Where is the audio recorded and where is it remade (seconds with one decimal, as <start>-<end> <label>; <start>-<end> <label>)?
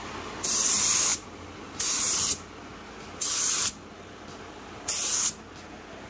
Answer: 0.0-6.1 recorded